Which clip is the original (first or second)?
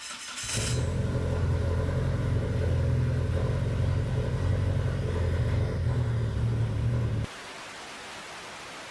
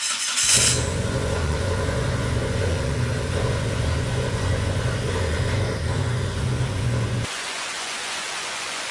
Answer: first